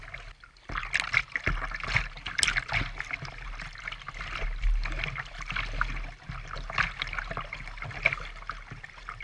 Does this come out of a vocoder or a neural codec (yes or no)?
no